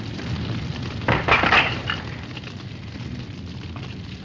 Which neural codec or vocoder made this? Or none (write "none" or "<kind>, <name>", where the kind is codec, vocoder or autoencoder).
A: none